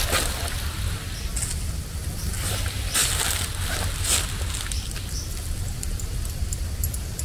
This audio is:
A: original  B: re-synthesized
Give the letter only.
A